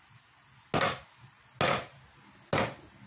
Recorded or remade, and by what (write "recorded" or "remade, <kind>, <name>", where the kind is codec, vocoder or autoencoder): recorded